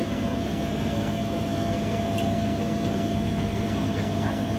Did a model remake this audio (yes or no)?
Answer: yes